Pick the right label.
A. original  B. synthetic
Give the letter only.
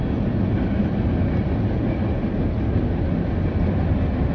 A